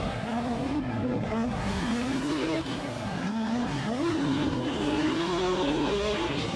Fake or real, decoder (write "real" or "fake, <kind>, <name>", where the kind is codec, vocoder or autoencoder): fake, codec, SNAC